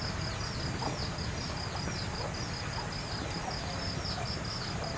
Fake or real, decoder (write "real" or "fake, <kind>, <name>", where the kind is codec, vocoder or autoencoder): real